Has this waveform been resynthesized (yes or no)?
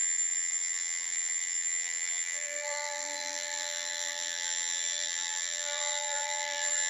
yes